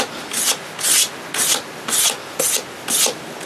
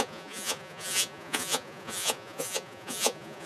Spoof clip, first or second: second